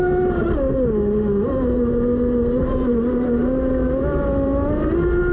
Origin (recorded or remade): recorded